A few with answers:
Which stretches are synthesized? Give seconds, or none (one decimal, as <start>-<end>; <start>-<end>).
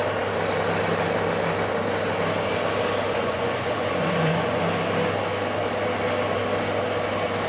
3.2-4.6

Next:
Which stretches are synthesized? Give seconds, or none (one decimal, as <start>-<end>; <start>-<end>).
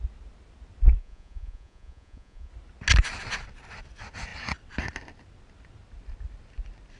1.0-2.5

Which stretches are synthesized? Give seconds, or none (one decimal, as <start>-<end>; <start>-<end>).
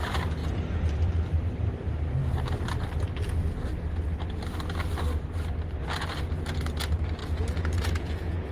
7.2-8.5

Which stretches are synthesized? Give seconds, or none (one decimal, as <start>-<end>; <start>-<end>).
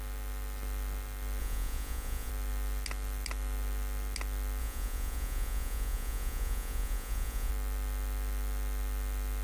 1.4-2.3; 4.6-7.5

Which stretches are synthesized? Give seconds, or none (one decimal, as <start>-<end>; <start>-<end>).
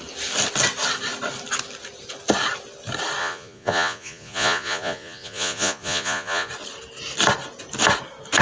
3.2-6.5